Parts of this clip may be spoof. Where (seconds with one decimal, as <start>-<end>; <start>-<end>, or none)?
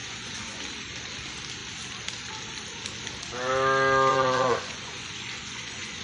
0.0-0.6; 4.1-6.0